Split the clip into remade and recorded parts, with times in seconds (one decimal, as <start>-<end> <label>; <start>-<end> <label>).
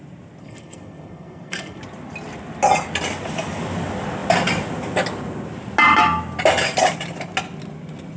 0.0-0.4 recorded; 0.4-1.8 remade; 1.8-8.2 recorded